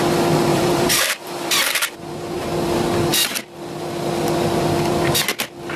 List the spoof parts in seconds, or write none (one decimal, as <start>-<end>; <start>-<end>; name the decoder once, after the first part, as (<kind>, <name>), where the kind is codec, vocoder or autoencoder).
0.5-2.4 (vocoder, BigVGAN v2)